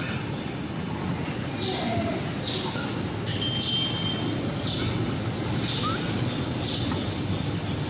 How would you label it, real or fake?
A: real